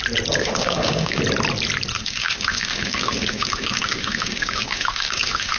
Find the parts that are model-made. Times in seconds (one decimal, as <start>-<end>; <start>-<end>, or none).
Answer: 0.4-1.2; 1.9-5.6